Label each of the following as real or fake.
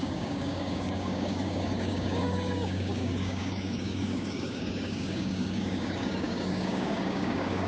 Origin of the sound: fake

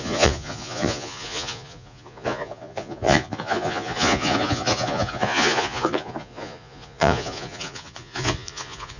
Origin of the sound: fake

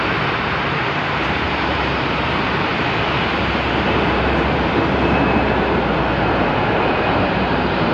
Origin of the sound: fake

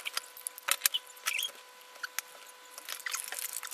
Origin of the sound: real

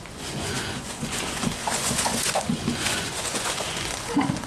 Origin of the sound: fake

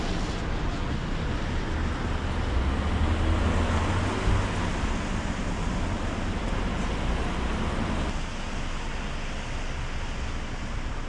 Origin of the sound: real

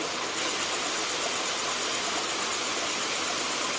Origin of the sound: real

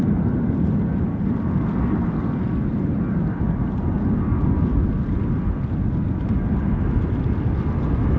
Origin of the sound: real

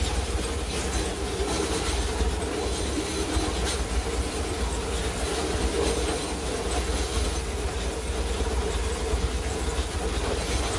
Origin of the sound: real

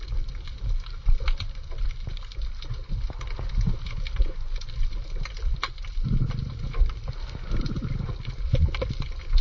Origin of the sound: real